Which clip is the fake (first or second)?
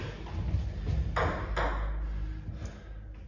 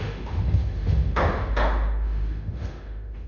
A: second